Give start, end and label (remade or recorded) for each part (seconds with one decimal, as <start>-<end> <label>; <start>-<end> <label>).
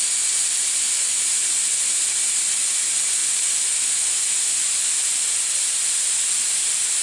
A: 0.0-7.0 recorded